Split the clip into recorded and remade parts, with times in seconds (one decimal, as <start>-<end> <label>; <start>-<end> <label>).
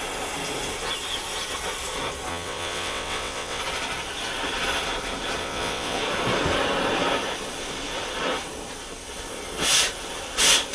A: 0.0-2.3 recorded; 2.3-3.6 remade; 3.6-5.4 recorded; 5.4-6.0 remade; 6.0-10.7 recorded